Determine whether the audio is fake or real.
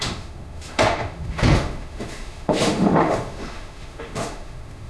fake